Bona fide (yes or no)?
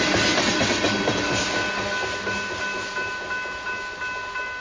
yes